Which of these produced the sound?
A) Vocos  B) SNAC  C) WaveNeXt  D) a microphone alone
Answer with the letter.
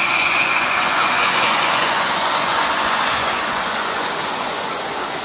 A